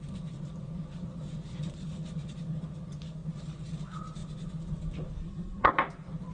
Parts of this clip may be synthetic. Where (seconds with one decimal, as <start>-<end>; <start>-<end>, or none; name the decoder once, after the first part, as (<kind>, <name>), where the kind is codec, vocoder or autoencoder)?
5.2-5.7 (codec, SNAC)